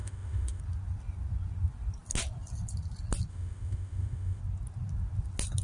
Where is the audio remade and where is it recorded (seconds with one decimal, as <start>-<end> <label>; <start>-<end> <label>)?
0.0-0.6 remade; 0.6-3.3 recorded; 3.3-4.4 remade; 4.4-5.6 recorded